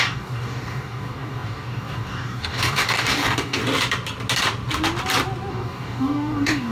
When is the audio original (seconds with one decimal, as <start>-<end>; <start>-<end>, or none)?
3.6-5.5